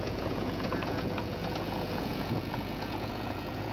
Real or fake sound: fake